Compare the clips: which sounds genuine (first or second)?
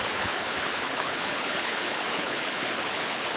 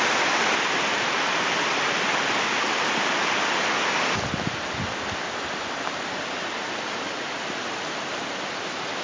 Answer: second